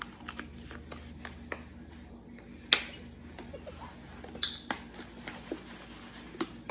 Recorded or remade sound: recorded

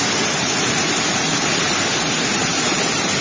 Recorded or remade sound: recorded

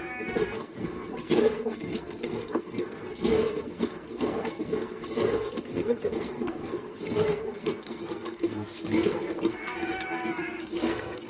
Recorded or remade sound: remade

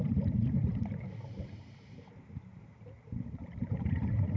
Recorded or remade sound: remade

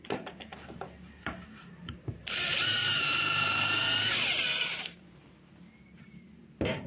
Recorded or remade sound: remade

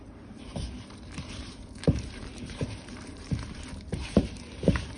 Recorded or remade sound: remade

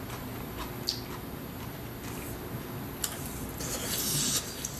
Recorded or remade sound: recorded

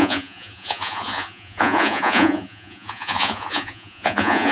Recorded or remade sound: remade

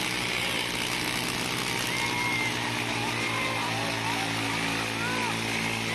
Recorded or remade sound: recorded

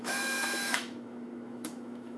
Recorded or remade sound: remade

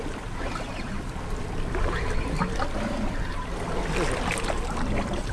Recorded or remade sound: recorded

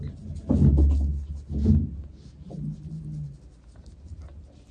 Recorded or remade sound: recorded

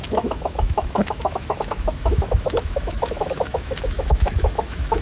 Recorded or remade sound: remade